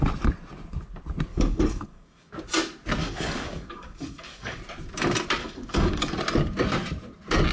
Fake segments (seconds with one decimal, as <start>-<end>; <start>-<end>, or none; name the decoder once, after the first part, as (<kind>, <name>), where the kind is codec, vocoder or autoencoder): 1.3-2.3 (codec, DAC); 3.0-4.6; 5.4-6.1